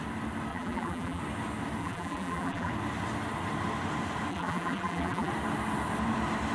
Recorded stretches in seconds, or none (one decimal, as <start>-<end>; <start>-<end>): 0.0-0.5; 1.2-1.8; 2.7-4.3; 5.3-6.5